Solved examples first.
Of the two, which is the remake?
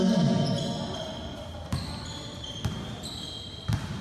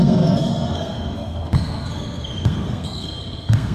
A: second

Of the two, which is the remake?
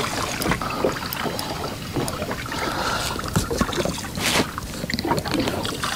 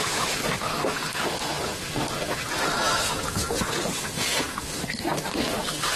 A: second